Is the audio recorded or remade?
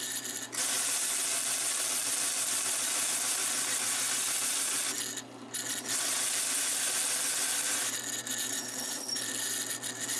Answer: recorded